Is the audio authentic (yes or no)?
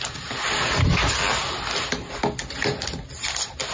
yes